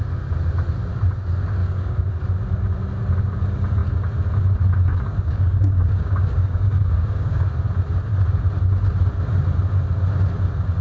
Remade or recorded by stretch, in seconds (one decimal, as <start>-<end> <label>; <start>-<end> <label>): 0.0-1.6 recorded; 1.6-2.1 remade; 2.1-4.9 recorded; 4.9-7.5 remade; 7.5-10.8 recorded